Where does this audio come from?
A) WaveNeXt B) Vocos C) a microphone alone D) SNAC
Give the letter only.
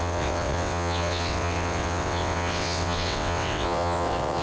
A